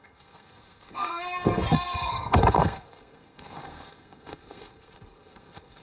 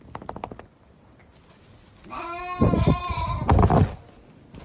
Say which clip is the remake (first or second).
first